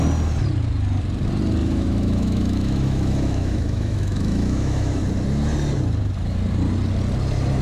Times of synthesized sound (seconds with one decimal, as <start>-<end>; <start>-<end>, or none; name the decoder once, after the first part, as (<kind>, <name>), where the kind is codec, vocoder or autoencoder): 1.6-5.0 (autoencoder, DAC-VAE)